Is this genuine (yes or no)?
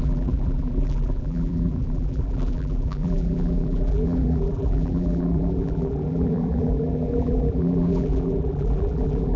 no